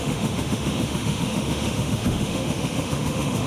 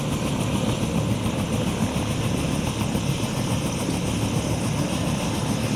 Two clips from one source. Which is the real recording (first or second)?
second